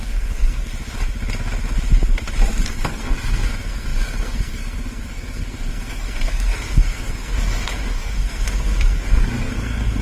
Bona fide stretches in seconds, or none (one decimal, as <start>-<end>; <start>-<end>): 0.7-2.7

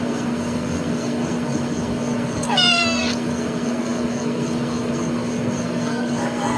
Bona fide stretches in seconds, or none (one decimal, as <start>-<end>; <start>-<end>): none

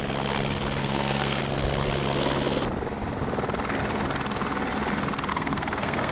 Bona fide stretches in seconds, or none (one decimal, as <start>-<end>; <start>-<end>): 0.0-0.8; 1.4-5.3

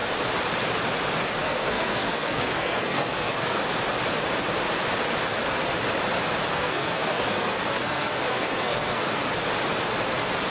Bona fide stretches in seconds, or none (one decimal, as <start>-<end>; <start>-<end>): 0.0-1.4; 3.6-6.5; 9.2-10.5

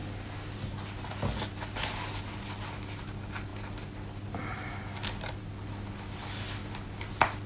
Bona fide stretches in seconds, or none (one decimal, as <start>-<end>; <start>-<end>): 0.0-7.5

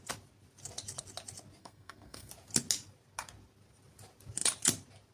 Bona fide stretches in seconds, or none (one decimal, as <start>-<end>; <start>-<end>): 0.0-1.6; 2.3-5.1

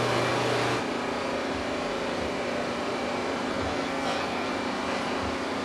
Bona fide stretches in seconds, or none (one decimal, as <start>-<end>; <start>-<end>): 0.0-3.5; 4.5-5.6